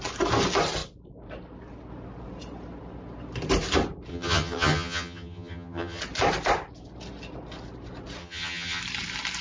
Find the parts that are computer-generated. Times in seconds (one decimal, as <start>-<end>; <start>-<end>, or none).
4.1-6.0; 8.2-8.8